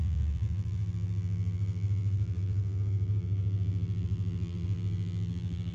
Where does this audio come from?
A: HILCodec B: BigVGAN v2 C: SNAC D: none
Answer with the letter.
B